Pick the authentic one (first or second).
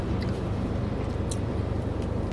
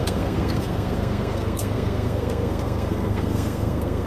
first